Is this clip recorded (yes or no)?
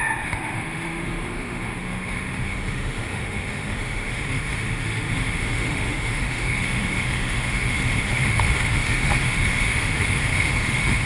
no